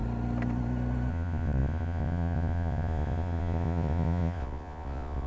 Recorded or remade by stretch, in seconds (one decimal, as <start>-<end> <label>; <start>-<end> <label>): 0.0-1.1 recorded; 1.1-5.3 remade